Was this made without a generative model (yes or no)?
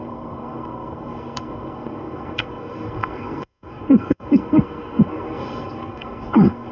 no